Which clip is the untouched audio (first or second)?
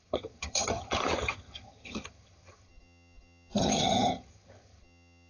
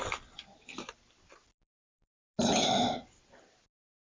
second